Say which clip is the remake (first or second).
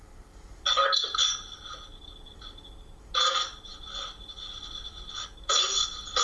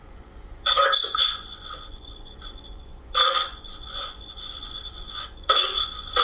second